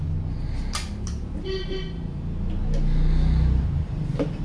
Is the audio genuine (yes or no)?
yes